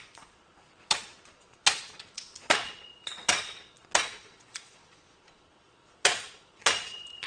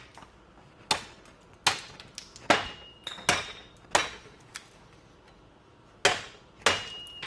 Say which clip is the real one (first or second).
second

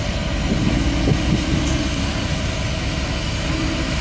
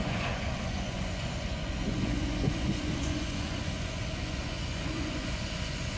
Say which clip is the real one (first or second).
first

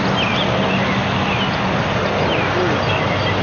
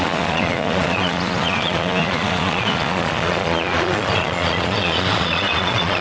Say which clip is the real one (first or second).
first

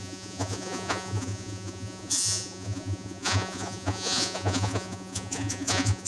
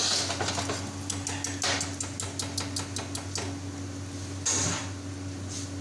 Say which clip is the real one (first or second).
second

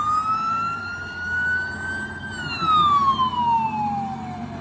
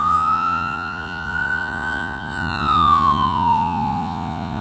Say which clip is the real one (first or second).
first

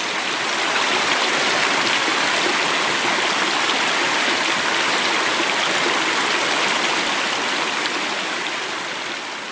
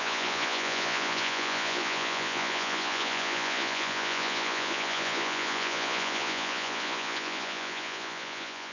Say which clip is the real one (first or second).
first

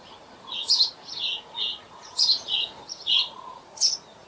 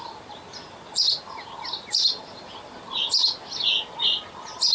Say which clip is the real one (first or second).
second